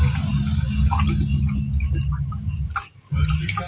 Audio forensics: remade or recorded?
recorded